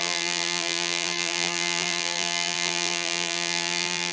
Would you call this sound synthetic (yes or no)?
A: yes